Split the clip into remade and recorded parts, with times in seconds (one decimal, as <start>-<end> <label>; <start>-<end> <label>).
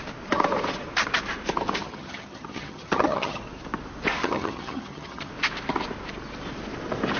0.0-1.8 recorded; 1.8-3.4 remade; 3.4-4.2 recorded; 4.2-5.3 remade; 5.3-7.2 recorded